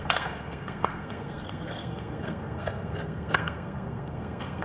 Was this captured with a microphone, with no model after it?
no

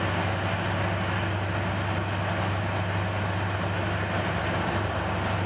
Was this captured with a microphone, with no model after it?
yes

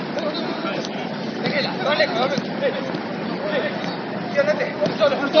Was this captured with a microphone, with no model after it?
yes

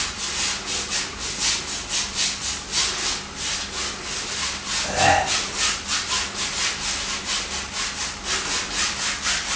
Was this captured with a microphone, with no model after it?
yes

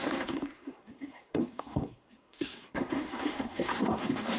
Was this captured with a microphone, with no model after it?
no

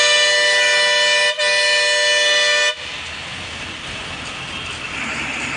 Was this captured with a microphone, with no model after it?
yes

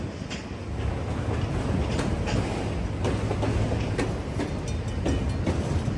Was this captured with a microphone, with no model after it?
yes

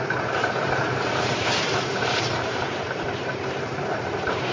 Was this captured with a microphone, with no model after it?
no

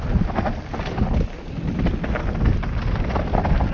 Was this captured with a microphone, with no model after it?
yes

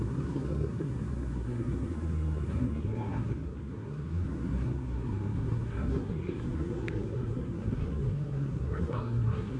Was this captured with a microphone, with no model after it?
no